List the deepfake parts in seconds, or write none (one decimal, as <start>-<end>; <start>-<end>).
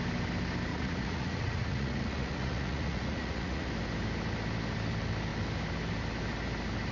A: 0.7-3.7